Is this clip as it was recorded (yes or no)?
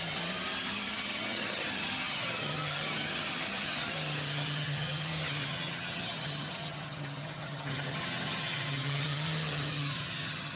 no